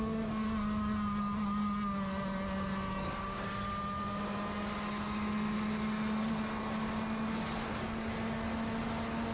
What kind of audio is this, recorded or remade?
recorded